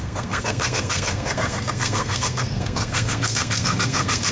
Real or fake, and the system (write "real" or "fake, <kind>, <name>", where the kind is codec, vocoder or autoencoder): fake, codec, SNAC